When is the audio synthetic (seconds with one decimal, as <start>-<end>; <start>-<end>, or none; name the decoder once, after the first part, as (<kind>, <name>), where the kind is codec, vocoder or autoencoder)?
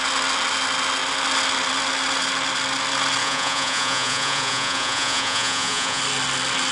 3.2-6.0 (vocoder, Vocos)